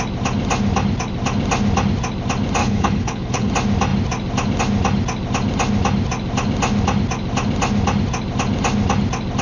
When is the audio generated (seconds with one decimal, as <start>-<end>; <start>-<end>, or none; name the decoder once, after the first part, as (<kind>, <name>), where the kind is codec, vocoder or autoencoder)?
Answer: 2.6-3.5 (codec, HILCodec)